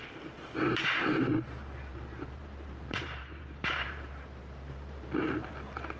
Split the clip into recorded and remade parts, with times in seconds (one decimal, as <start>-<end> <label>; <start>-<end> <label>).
0.0-1.9 recorded; 1.9-5.5 remade; 5.5-6.0 recorded